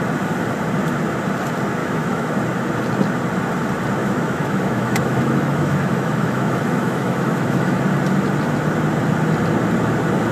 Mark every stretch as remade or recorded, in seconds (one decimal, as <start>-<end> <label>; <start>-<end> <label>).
0.0-1.8 recorded; 1.8-2.3 remade; 2.3-4.0 recorded; 4.0-7.8 remade; 7.8-10.3 recorded